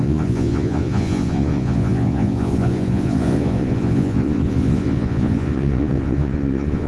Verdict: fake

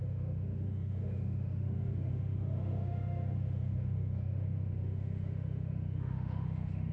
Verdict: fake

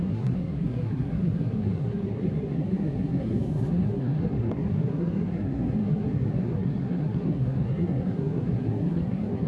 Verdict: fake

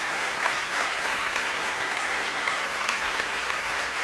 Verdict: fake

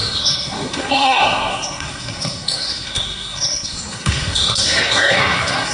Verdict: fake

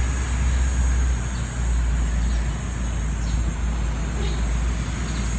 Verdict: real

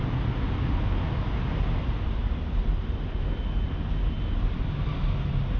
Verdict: real